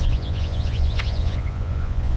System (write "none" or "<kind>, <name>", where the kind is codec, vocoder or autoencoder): vocoder, Vocos